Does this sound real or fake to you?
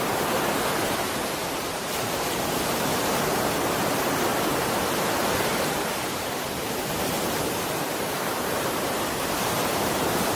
fake